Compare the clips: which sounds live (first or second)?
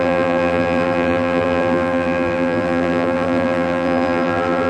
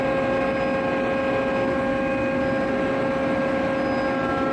second